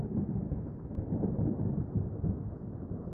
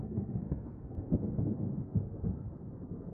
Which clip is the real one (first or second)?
first